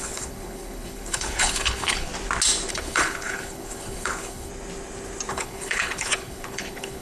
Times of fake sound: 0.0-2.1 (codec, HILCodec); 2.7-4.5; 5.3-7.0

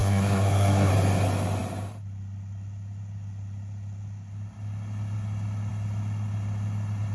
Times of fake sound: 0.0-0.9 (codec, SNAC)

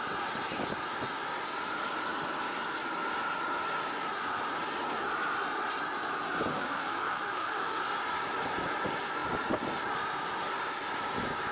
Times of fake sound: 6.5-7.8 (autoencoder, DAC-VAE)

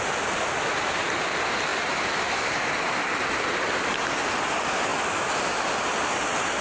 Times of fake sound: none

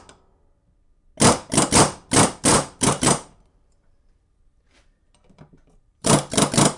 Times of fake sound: 2.5-6.1 (vocoder, BigVGAN v2)